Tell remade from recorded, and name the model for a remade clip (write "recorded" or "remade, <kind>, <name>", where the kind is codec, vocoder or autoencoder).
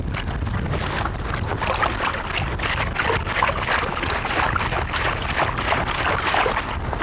recorded